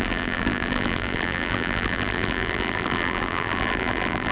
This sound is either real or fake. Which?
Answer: fake